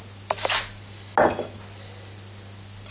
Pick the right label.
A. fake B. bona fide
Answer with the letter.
B